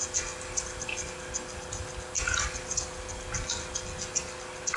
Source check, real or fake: real